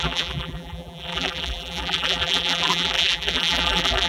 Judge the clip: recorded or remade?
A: remade